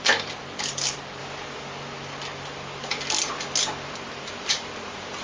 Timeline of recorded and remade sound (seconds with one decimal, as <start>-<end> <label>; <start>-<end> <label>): 0.0-1.2 remade; 1.2-4.2 recorded; 4.2-5.2 remade